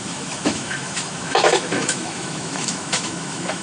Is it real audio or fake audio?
fake